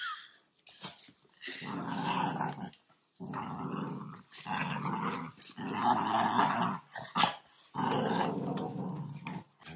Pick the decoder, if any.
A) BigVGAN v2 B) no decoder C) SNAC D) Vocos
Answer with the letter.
B